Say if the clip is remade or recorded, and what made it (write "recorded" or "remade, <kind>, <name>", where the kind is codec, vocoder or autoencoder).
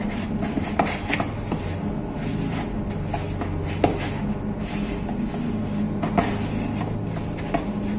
recorded